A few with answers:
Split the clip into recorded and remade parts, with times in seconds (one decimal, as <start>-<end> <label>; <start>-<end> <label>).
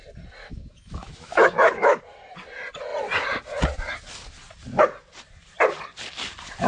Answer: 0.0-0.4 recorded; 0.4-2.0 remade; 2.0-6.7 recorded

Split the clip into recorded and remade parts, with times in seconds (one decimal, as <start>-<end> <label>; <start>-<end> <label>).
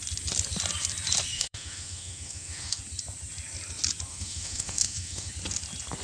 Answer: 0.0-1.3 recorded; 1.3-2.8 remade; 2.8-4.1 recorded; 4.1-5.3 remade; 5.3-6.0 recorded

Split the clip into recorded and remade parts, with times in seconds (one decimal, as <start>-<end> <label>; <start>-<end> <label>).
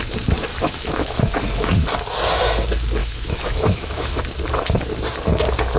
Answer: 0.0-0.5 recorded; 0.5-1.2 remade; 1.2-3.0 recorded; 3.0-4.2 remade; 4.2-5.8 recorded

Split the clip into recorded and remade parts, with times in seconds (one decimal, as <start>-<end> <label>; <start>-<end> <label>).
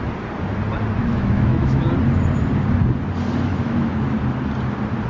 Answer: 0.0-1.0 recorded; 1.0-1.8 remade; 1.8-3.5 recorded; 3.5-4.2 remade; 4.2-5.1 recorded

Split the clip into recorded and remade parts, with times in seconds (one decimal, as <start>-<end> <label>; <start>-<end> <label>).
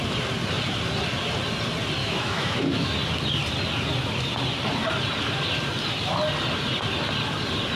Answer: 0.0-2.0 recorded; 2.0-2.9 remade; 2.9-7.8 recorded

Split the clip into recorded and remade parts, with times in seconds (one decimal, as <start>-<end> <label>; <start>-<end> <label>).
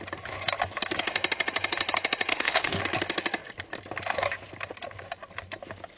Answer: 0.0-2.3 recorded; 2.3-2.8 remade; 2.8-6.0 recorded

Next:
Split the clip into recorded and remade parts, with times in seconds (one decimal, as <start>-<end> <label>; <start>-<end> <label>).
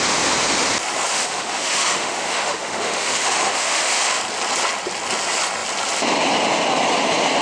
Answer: 0.0-1.1 recorded; 1.1-4.2 remade; 4.2-7.4 recorded